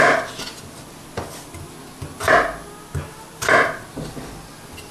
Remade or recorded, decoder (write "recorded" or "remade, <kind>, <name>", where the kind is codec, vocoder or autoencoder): recorded